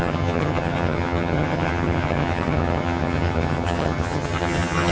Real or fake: fake